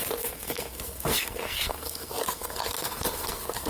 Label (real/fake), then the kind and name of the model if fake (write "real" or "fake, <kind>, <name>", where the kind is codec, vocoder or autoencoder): fake, codec, SNAC